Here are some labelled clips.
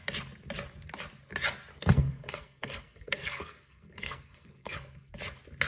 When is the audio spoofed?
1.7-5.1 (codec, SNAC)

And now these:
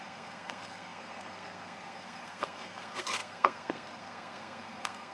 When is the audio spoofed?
0.0-5.1 (codec, SNAC)

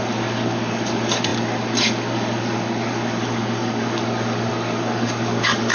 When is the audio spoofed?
0.0-5.7 (codec, DAC)

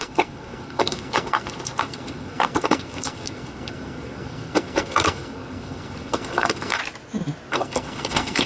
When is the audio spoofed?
0.0-6.8 (codec, SNAC); 7.5-8.5